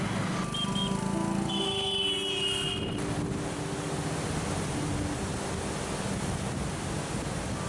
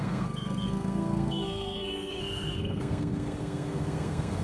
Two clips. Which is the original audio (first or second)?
first